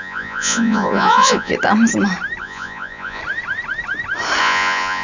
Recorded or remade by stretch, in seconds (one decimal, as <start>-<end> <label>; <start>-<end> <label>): 0.0-1.5 remade; 1.5-2.4 recorded; 2.4-3.2 remade; 3.2-4.4 recorded; 4.4-5.0 remade